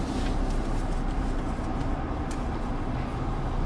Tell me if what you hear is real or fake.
real